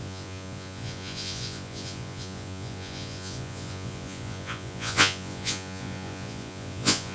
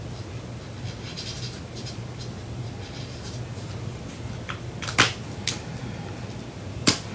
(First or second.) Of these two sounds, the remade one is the first